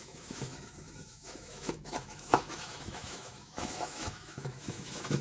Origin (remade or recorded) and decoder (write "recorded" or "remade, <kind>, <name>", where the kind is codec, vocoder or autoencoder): remade, autoencoder, DAC-VAE